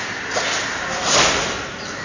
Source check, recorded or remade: remade